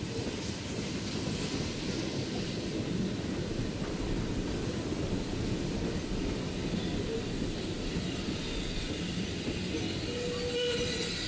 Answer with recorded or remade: recorded